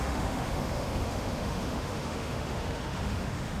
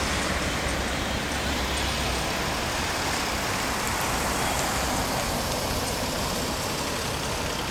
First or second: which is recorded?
second